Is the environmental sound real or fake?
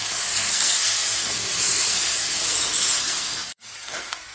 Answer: fake